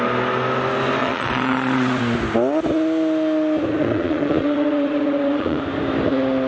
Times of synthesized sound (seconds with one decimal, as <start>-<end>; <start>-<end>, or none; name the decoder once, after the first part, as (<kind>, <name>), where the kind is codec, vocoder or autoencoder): 1.0-2.0 (vocoder, Vocos); 3.8-5.6